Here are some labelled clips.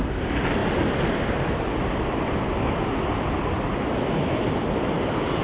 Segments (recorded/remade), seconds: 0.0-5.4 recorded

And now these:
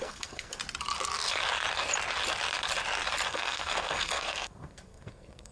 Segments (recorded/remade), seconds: 0.0-0.6 remade; 0.6-3.3 recorded; 3.3-5.5 remade

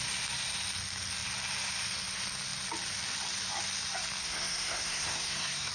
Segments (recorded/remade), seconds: 0.0-4.2 recorded; 4.2-5.7 remade

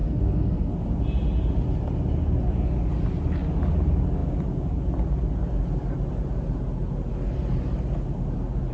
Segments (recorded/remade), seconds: 0.0-0.7 remade; 0.7-8.7 recorded

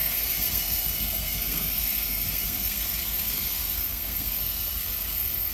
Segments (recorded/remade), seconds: 0.0-5.5 remade

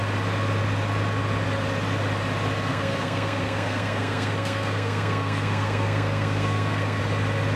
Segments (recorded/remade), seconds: 0.0-2.7 recorded; 2.7-7.0 remade; 7.0-7.6 recorded

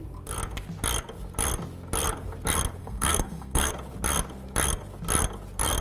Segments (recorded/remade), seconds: 0.0-2.8 recorded; 2.8-3.7 remade; 3.7-5.8 recorded

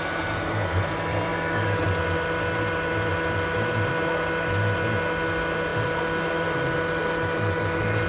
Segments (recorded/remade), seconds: 0.0-8.1 recorded